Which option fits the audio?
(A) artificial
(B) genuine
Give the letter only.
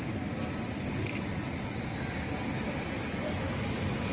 B